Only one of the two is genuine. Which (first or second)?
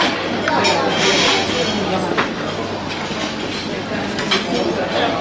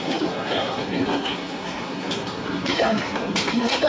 first